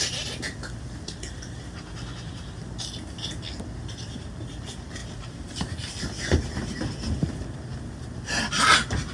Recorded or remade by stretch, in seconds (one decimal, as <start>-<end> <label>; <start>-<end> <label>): 0.0-5.0 recorded; 5.0-6.0 remade; 6.0-9.1 recorded